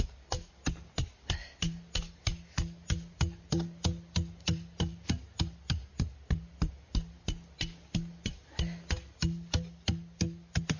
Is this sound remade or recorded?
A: recorded